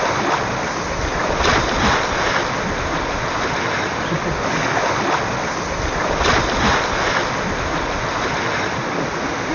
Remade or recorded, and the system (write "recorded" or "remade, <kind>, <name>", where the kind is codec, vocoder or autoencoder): recorded